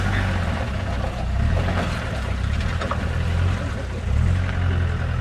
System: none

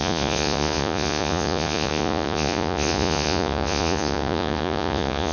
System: vocoder, Vocos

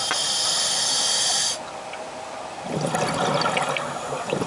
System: none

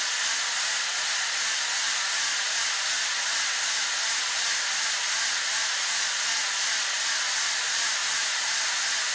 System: none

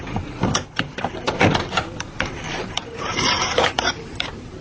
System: vocoder, BigVGAN v2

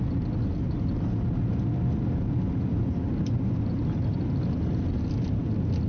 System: none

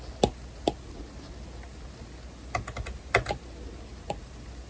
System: none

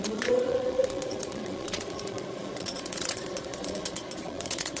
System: vocoder, Vocos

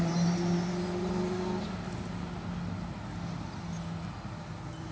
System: none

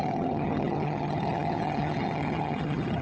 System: vocoder, HiFi-GAN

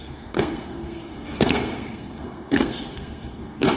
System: codec, SNAC